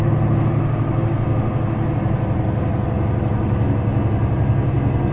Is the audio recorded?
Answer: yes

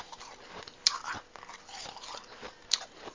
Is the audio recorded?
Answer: yes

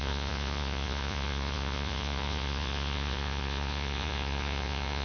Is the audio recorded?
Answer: no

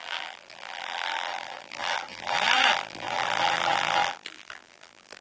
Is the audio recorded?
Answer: no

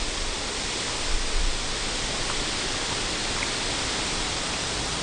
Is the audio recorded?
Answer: yes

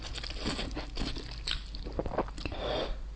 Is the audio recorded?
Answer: no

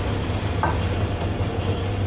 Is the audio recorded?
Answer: yes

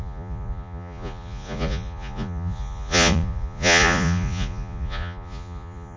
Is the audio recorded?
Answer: no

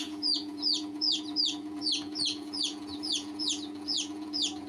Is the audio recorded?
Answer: no